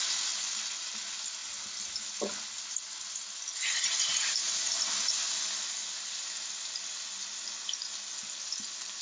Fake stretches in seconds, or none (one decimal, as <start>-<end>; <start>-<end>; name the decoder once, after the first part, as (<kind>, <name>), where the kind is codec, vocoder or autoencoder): none